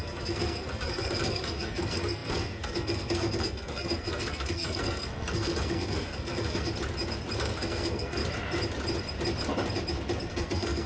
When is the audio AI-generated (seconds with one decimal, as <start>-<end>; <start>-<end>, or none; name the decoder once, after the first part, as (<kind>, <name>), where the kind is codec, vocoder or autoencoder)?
0.0-6.7 (codec, SNAC); 7.4-8.2; 10.3-10.9